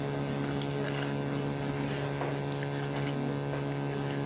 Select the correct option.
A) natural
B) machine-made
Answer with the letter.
A